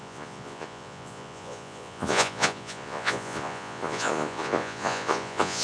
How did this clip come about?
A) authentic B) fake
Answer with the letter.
B